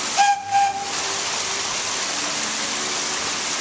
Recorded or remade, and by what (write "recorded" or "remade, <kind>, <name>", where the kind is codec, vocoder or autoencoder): recorded